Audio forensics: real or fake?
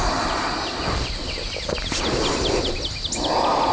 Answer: real